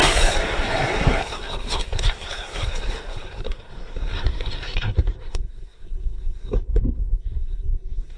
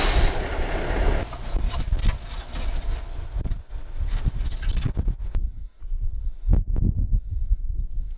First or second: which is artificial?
first